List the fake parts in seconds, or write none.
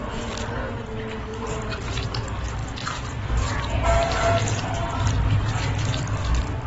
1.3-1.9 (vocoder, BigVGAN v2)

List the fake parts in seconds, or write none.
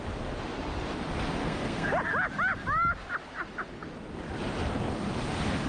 1.4-1.9 (codec, SNAC)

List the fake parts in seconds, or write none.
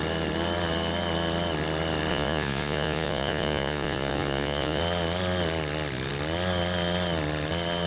2.1-4.8 (vocoder, Vocos)